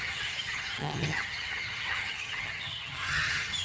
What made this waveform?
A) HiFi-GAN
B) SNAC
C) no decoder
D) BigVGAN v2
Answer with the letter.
A